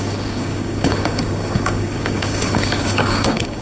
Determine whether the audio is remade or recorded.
remade